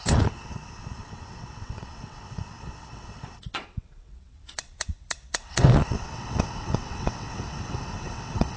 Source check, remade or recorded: remade